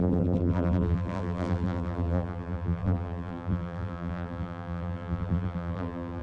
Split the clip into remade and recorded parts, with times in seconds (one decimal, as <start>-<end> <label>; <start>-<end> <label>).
0.0-6.2 remade